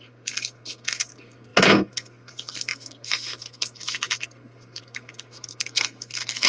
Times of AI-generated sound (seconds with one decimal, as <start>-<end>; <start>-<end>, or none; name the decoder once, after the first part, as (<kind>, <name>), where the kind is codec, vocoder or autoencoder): 0.0-6.5 (codec, SNAC)